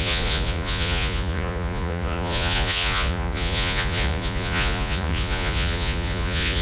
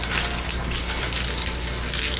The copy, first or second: first